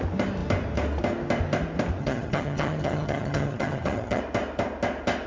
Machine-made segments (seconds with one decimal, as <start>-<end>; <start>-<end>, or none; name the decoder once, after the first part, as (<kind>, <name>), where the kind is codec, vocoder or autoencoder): 2.0-4.2 (vocoder, HiFi-GAN)

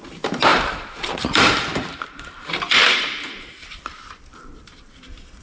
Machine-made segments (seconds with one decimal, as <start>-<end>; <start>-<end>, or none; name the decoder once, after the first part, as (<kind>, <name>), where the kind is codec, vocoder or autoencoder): 0.5-3.7 (vocoder, BigVGAN v2)